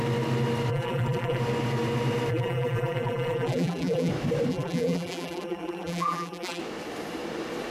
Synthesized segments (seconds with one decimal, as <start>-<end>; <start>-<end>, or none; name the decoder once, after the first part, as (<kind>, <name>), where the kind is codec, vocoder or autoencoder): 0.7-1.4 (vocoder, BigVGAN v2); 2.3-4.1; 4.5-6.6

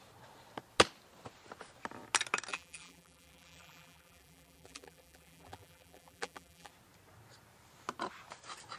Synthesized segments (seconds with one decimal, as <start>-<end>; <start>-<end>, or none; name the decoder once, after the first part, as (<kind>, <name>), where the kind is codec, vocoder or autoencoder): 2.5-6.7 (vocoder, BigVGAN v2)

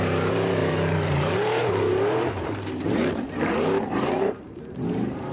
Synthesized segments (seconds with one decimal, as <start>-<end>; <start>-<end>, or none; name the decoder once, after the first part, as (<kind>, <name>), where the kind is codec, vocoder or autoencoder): 0.0-5.3 (vocoder, BigVGAN v2)

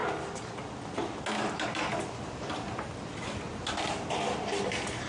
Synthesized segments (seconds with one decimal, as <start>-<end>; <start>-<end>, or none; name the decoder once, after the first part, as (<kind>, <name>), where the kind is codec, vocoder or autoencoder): 0.0-0.5 (vocoder, BigVGAN v2); 1.9-5.1

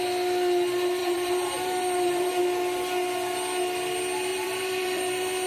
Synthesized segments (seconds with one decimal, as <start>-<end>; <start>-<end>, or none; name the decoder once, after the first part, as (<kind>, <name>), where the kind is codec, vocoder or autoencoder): 1.0-2.3 (vocoder, BigVGAN v2); 4.3-5.1

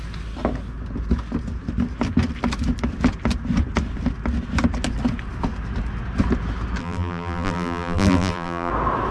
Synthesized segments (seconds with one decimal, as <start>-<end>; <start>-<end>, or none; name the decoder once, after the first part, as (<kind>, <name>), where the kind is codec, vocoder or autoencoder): 6.8-8.7 (vocoder, BigVGAN v2)